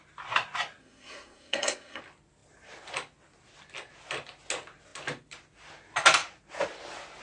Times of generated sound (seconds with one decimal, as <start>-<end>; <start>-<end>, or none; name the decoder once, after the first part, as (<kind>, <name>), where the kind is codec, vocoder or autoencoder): 0.8-2.0 (codec, SNAC)